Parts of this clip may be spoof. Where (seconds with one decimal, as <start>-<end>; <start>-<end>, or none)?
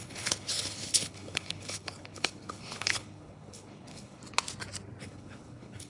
0.0-4.2; 5.0-5.9